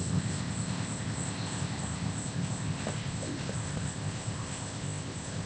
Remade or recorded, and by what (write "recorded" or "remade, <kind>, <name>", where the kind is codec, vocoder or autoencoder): remade, codec, ZipCodec